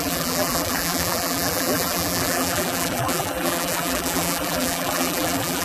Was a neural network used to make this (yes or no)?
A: yes